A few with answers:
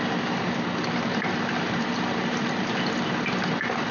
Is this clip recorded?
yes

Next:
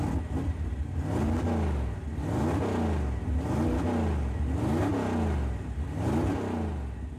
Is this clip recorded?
yes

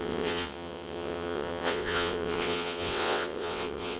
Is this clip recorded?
no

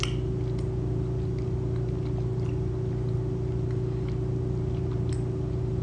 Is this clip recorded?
yes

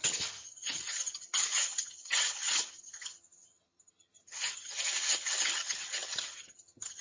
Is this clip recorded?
no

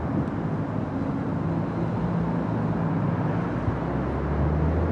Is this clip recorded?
yes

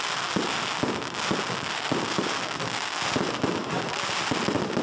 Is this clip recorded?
yes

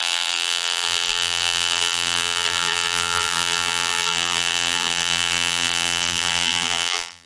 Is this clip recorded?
no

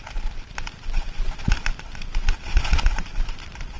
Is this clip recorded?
yes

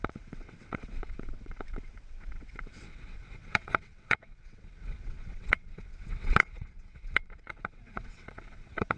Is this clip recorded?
no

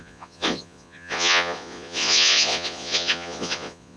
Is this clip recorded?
no